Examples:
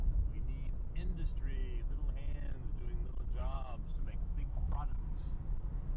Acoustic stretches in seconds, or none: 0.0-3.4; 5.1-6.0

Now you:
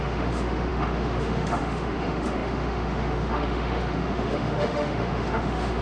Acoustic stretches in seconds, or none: none

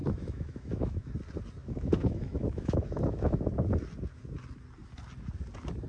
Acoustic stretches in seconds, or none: 1.1-1.6; 3.4-5.9